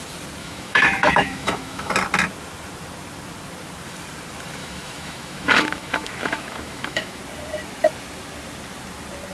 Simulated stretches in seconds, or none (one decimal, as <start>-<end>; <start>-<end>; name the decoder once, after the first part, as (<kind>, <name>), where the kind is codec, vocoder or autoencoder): 0.4-1.9 (autoencoder, DAC-VAE); 4.6-7.2